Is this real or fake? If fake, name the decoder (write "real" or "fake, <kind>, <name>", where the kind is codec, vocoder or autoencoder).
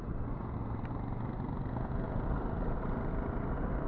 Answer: real